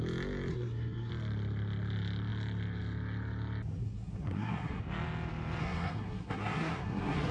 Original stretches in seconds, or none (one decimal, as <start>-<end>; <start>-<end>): 0.0-0.5; 1.1-3.8; 4.8-5.6